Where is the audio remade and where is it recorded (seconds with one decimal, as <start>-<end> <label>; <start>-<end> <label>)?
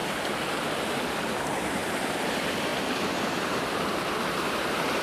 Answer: 0.0-2.7 remade; 2.7-3.3 recorded; 3.3-5.0 remade